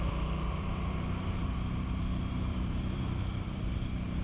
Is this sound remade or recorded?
remade